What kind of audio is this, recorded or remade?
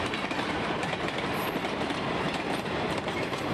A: remade